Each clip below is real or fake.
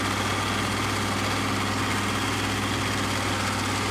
real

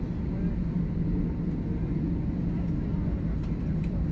real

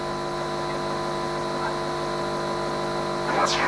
real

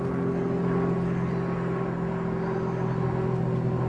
real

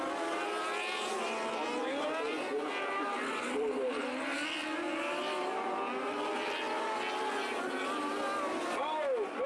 real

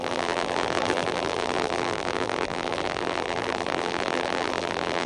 fake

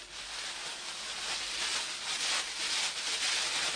real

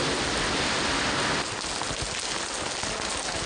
real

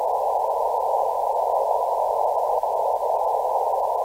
real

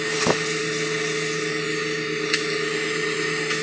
real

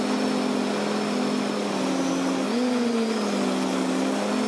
real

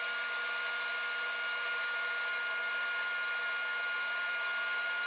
real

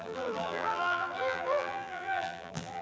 fake